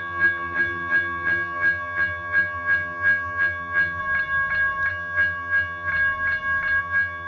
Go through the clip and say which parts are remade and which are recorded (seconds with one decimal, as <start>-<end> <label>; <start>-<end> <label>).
0.0-4.0 remade; 4.0-4.9 recorded; 4.9-5.9 remade; 5.9-6.8 recorded; 6.8-7.3 remade